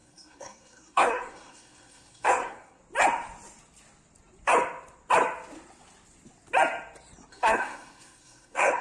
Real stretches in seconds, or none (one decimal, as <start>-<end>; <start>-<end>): 2.8-7.3